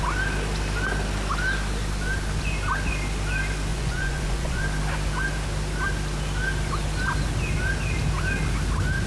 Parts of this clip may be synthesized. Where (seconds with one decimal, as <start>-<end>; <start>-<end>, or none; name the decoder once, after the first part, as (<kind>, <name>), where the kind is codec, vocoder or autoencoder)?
3.7-4.6 (vocoder, Vocos)